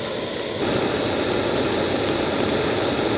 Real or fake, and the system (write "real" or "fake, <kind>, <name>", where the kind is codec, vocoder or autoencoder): real